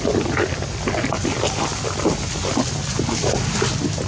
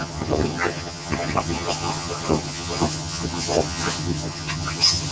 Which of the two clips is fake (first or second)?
second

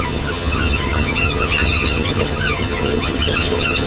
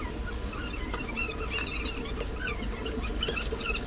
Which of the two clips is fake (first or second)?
first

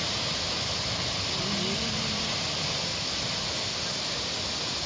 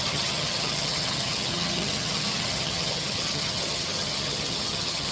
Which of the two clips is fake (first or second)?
second